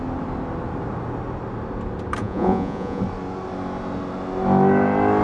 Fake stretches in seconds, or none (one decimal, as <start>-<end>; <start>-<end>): 2.2-3.0